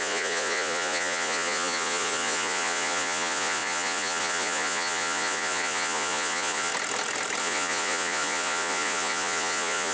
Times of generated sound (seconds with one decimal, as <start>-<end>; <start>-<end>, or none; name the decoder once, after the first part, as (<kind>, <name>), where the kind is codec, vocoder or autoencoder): 0.0-6.7 (vocoder, Vocos); 7.4-9.9